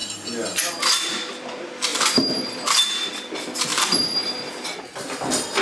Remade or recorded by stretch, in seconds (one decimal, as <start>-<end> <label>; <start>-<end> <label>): 0.0-1.9 recorded; 1.9-2.6 remade; 2.6-3.7 recorded; 3.7-4.5 remade; 4.5-5.6 recorded